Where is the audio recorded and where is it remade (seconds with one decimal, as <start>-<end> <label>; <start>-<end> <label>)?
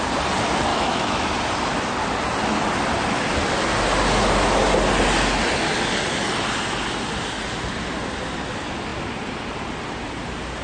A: 0.0-0.7 recorded; 0.7-1.3 remade; 1.3-10.6 recorded